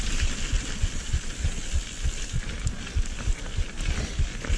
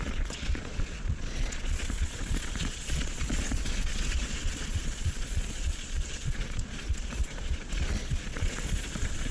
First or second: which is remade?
second